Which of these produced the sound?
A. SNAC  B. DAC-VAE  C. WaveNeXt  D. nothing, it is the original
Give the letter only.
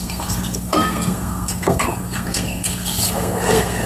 A